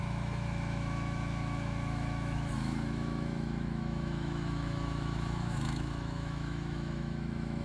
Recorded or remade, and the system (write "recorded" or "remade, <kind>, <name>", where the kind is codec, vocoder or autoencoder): remade, autoencoder, DAC-VAE